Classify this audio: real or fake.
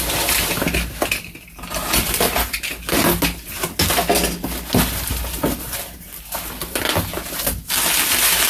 real